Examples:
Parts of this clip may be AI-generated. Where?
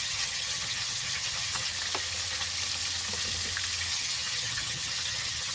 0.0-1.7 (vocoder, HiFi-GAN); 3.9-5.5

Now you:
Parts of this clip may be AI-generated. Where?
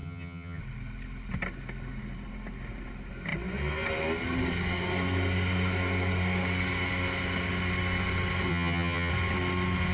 0.0-0.6 (vocoder, HiFi-GAN); 8.5-9.1